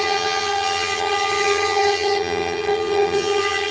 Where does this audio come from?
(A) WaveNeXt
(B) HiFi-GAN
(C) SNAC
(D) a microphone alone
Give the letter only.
B